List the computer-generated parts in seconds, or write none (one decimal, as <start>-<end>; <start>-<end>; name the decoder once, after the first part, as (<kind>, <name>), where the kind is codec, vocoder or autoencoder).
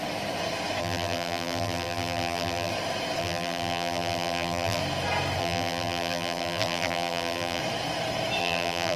0.8-2.7 (vocoder, BigVGAN v2); 3.2-4.8; 5.4-7.6; 8.4-9.0